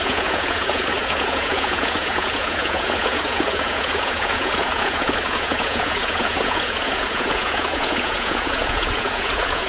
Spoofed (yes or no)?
yes